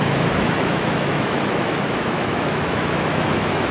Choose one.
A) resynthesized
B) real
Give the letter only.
A